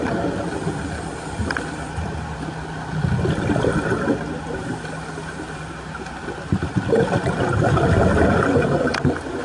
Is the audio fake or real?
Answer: real